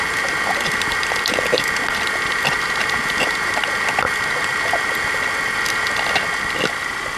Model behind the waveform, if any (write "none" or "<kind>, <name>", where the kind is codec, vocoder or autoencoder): none